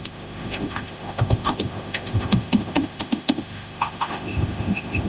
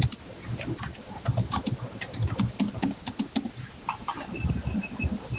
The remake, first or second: first